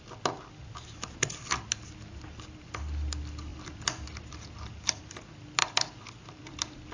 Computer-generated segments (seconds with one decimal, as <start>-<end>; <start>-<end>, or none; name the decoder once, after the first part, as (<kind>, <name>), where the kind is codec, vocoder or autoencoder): 3.5-5.1 (vocoder, BigVGAN v2); 5.6-6.4